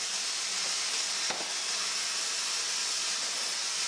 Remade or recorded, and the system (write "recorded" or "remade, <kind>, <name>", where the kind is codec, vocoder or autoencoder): recorded